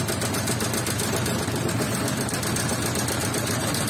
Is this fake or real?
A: real